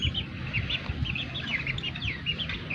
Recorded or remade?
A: recorded